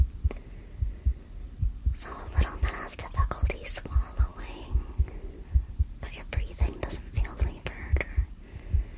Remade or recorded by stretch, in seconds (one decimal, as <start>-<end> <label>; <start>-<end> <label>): 0.0-4.3 recorded; 4.3-9.0 remade